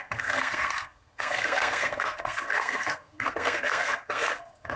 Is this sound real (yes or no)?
no